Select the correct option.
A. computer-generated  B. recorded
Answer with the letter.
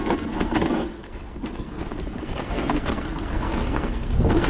A